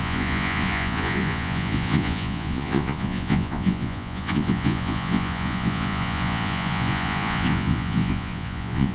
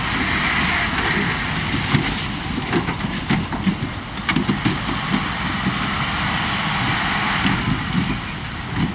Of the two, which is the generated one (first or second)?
first